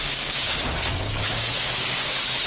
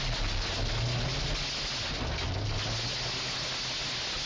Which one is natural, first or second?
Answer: second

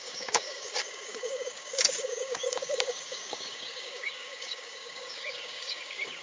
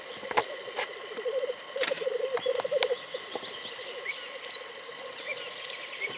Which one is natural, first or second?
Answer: second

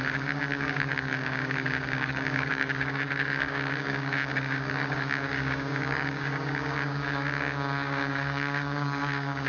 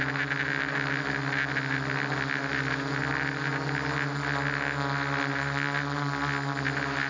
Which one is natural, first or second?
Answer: second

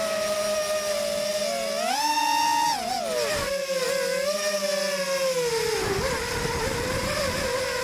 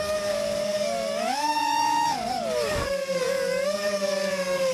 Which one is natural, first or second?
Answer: first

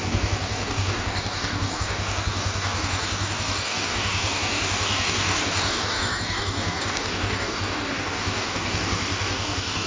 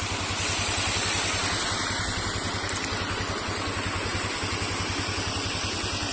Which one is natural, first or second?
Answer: second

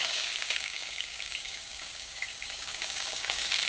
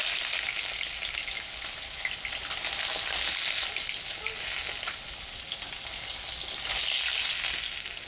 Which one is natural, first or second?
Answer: second